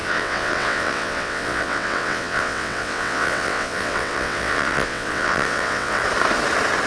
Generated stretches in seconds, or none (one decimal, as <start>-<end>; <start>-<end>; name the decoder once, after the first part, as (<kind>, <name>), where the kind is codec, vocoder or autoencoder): 0.0-6.0 (vocoder, WaveNeXt)